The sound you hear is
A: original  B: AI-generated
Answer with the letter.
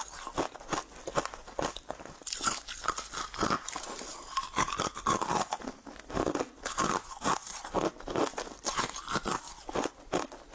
A